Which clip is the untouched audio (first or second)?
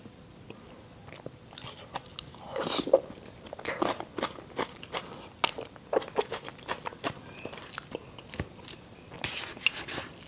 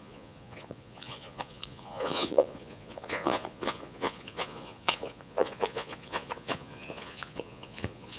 first